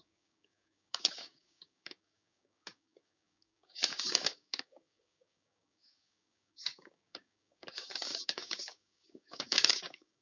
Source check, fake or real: fake